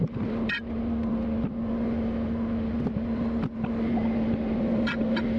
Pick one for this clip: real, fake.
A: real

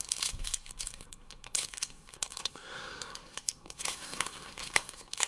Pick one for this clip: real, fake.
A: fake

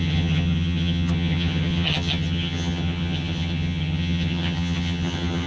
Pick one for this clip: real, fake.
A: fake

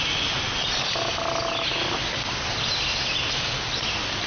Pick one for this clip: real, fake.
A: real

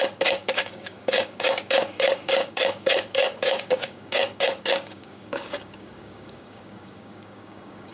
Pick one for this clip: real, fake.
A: fake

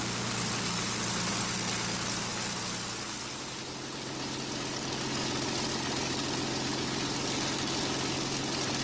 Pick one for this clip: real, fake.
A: real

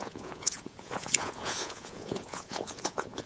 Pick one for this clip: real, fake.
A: fake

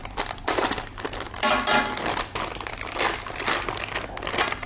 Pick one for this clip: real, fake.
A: real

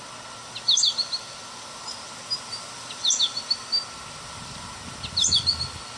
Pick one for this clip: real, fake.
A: real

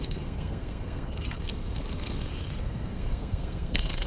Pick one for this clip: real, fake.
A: fake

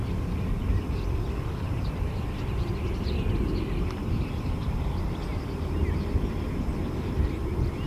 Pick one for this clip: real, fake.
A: real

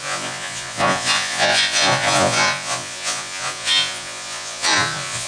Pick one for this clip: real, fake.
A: fake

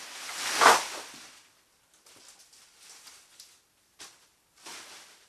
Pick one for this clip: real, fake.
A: real